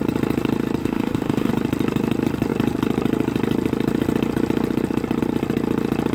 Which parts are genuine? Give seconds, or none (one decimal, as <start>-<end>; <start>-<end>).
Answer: 0.0-0.8; 1.5-6.1